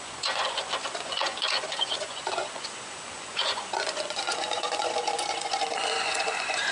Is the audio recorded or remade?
remade